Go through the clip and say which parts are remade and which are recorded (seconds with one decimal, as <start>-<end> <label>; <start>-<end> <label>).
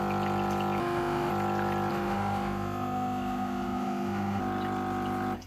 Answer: 0.0-0.8 recorded; 0.8-1.3 remade; 1.3-1.9 recorded; 1.9-4.4 remade; 4.4-5.5 recorded